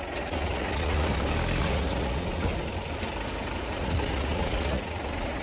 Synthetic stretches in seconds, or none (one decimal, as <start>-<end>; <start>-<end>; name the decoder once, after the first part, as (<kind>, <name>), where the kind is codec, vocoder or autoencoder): 0.0-1.1 (vocoder, Vocos); 1.6-2.5; 3.6-5.4